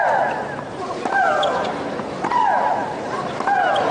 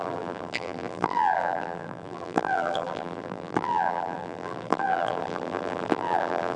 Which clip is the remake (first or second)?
second